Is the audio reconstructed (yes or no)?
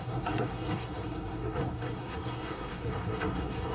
yes